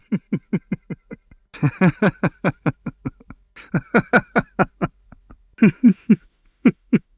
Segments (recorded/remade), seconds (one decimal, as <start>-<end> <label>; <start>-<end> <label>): 0.0-5.9 recorded; 5.9-7.2 remade